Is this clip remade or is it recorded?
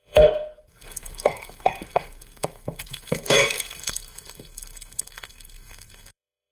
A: remade